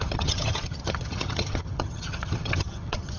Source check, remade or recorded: remade